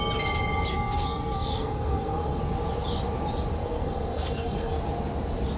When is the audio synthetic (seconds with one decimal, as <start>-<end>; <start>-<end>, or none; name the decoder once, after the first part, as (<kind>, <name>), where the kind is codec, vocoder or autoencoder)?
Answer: 0.7-2.4 (codec, SNAC); 3.6-4.8